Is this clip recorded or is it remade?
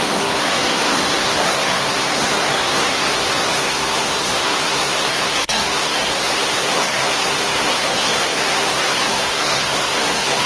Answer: remade